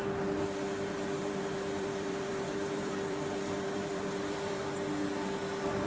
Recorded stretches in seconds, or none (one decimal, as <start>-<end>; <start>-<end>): 0.0-1.2; 4.6-5.9